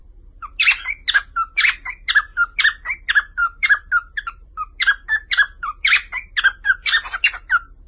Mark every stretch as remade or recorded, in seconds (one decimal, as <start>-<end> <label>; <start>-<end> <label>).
0.0-3.4 recorded; 3.4-4.5 remade; 4.5-7.9 recorded